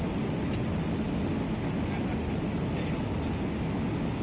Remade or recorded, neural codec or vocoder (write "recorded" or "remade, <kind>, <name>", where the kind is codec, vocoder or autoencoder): recorded